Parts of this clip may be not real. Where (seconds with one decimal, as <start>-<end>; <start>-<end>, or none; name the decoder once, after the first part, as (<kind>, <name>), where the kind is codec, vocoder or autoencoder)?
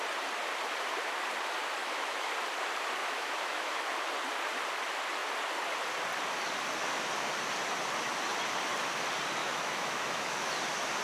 1.8-2.3 (autoencoder, DAC-VAE); 3.0-3.9; 9.4-10.5